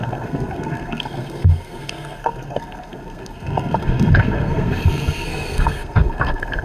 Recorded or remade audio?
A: remade